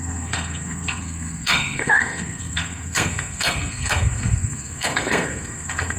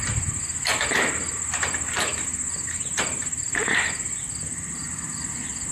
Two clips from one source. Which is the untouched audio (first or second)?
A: second